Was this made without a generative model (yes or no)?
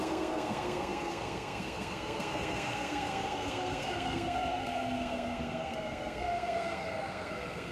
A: no